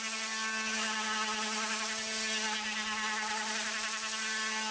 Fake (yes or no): no